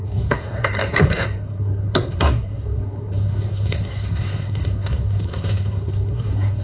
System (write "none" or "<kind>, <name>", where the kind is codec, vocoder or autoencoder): codec, SNAC